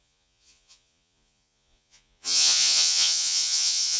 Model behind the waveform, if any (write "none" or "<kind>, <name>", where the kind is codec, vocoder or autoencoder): vocoder, Vocos